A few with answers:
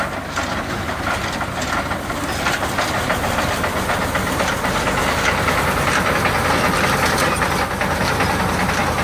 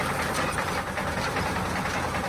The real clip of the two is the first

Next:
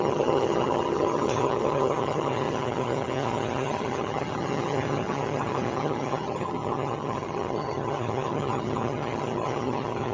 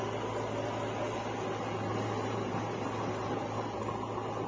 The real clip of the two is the second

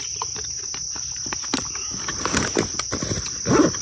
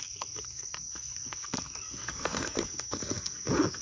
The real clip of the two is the first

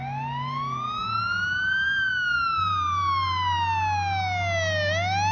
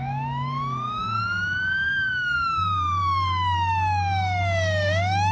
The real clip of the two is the first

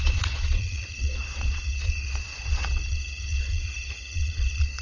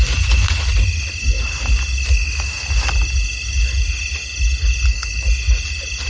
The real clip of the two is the second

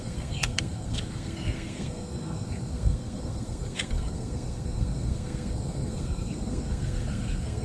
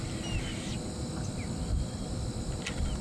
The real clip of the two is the second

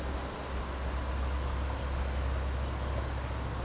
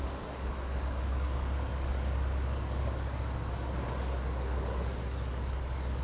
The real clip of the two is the first